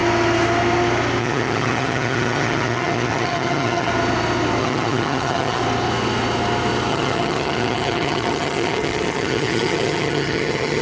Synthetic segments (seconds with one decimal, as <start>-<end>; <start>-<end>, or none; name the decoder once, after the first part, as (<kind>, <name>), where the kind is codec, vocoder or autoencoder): 1.2-3.9 (vocoder, HiFi-GAN); 4.6-5.6; 6.9-10.8